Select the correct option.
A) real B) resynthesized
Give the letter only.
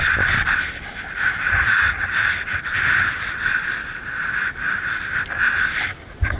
A